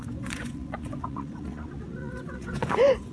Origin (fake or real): fake